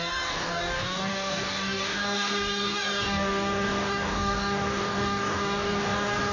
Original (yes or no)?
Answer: no